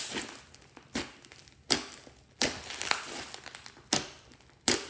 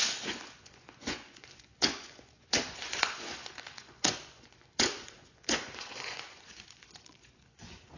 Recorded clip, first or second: first